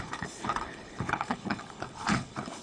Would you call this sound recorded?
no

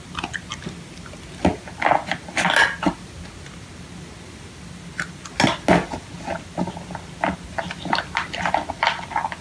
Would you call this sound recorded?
yes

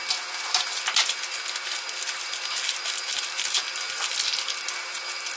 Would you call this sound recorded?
yes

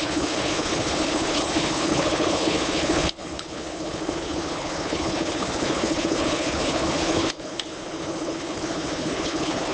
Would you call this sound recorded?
no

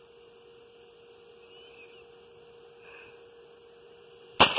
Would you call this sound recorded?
yes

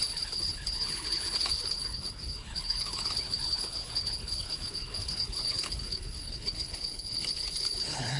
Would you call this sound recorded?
no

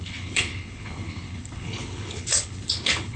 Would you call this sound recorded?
no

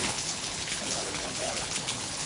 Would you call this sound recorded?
no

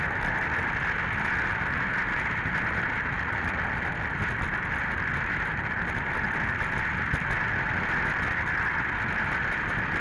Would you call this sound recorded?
yes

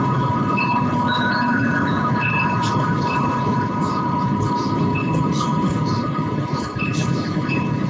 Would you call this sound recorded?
no